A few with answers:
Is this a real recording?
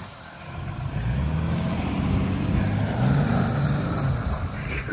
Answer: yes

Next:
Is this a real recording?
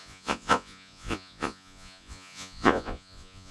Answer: no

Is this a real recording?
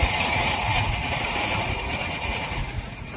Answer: no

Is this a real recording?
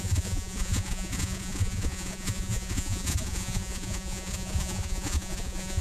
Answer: no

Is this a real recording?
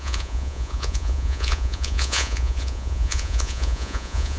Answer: no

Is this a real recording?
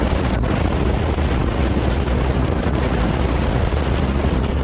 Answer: no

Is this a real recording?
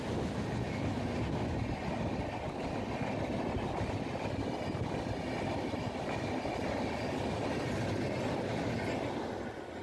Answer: yes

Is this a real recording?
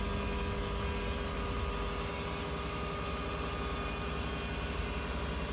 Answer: yes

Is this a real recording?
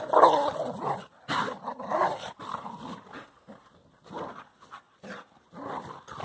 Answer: yes